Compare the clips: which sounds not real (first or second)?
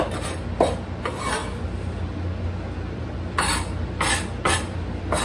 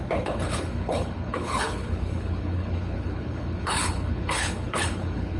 second